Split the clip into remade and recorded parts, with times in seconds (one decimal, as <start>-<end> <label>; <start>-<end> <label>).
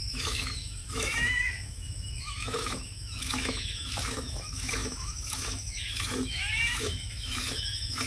0.0-8.1 remade